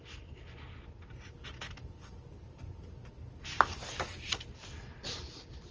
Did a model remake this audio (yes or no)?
no